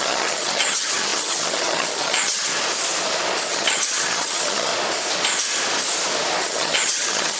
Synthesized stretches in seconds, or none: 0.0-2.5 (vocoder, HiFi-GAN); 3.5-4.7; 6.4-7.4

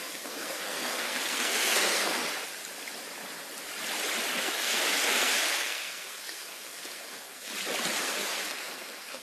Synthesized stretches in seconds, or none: 0.0-2.2 (codec, SNAC); 4.3-7.5; 8.0-9.2

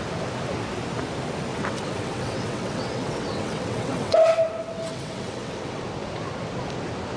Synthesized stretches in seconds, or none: 1.5-5.8 (vocoder, WaveNeXt)

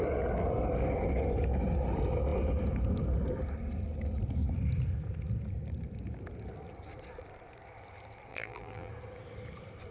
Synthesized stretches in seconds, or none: 8.3-8.9 (vocoder, BigVGAN v2)

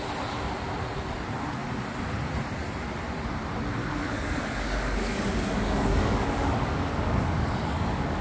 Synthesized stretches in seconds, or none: 3.8-8.2 (codec, DAC)

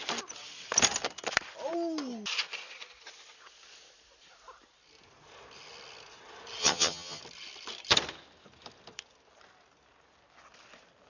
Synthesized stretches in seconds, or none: 6.6-7.2 (vocoder, HiFi-GAN)